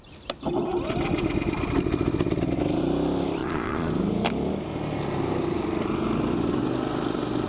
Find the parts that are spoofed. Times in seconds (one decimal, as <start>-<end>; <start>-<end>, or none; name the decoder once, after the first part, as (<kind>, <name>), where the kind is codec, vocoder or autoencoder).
3.4-3.9 (vocoder, Vocos)